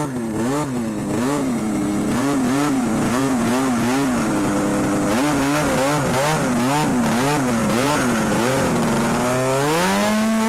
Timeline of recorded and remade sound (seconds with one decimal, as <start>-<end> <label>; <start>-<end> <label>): 0.0-1.0 recorded; 1.0-3.5 remade; 3.5-7.6 recorded; 7.6-8.7 remade; 8.7-10.5 recorded